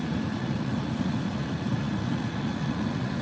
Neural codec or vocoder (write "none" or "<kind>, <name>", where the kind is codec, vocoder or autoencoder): vocoder, Vocos